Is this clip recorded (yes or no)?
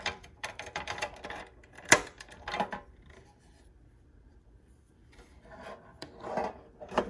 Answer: no